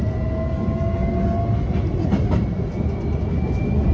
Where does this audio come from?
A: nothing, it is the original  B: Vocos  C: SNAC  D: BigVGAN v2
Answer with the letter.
A